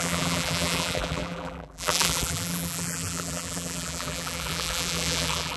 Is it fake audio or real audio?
fake